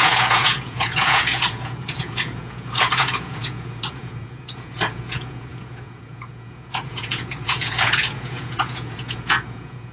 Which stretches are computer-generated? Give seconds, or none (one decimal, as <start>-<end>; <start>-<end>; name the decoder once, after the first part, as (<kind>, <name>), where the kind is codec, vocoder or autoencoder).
0.0-9.9 (vocoder, Vocos)

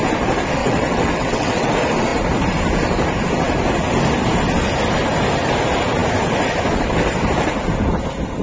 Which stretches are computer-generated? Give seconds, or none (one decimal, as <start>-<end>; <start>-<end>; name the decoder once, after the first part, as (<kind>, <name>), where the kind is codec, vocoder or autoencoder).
0.6-1.7 (vocoder, WaveNeXt)

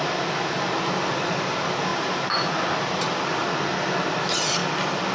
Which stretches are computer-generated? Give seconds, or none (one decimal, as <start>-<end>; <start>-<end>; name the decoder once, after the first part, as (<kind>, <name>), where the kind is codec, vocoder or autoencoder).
none

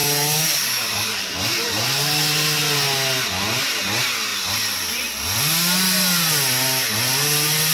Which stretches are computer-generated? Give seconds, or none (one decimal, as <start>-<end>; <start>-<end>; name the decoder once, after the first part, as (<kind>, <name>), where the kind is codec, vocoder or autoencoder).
0.0-1.3 (codec, DAC)

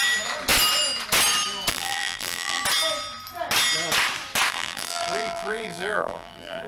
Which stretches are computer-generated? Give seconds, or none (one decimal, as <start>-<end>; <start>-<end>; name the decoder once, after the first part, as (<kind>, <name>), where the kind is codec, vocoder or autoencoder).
1.7-2.6 (vocoder, BigVGAN v2); 4.5-6.7